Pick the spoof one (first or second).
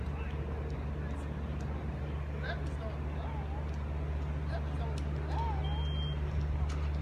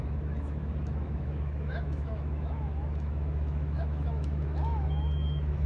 second